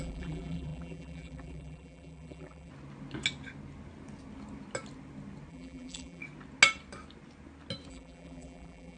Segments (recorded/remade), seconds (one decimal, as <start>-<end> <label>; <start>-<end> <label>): 0.0-2.7 remade; 2.7-5.5 recorded; 5.5-6.2 remade; 6.2-7.9 recorded; 7.9-9.0 remade